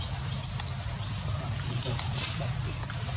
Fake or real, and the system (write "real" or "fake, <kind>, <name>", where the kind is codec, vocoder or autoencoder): real